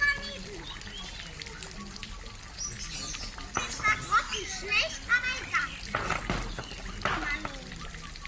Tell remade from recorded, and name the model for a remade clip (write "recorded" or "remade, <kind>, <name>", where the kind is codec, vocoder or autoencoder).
recorded